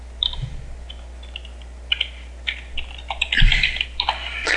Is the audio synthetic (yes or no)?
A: no